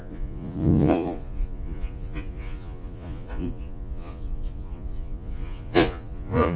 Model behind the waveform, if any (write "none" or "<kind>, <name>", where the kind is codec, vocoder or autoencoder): vocoder, Vocos